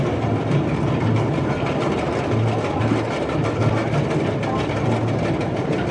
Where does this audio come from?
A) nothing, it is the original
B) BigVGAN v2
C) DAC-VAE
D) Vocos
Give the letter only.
A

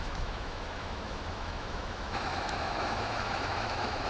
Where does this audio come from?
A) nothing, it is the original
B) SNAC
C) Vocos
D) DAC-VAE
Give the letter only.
D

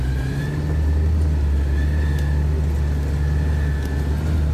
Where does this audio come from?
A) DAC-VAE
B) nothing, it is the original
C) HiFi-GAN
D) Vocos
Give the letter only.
B